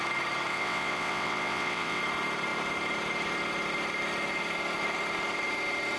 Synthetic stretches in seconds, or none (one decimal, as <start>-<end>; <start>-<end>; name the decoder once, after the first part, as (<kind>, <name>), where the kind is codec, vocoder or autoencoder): 0.5-2.0 (vocoder, WaveNeXt)